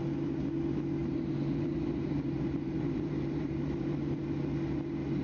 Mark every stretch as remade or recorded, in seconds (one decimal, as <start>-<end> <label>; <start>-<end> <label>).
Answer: 0.0-1.0 recorded; 1.0-4.1 remade; 4.1-5.2 recorded